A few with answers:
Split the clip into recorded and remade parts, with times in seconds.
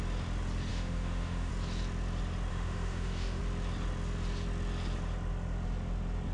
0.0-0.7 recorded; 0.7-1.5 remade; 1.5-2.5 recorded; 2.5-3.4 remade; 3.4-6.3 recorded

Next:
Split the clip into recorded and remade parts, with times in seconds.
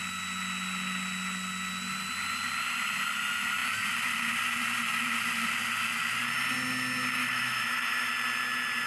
0.0-7.2 recorded; 7.2-8.1 remade; 8.1-8.9 recorded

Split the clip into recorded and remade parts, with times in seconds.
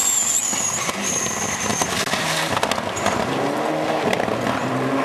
0.0-5.0 recorded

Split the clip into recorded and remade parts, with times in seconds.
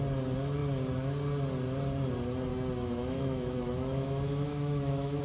0.0-2.5 recorded; 2.5-5.2 remade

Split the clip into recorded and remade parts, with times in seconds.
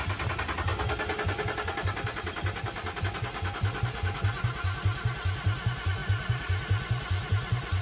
0.0-7.8 recorded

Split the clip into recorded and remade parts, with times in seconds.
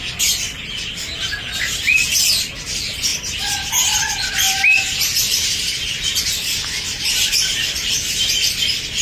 0.0-9.0 recorded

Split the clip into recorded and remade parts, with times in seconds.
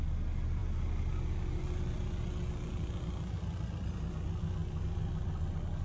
0.0-5.8 recorded